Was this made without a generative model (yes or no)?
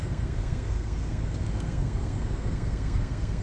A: no